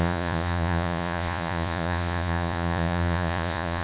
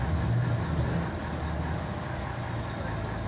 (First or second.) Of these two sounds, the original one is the second